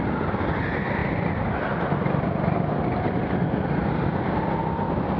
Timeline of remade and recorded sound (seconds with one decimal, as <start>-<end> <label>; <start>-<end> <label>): 0.0-5.2 recorded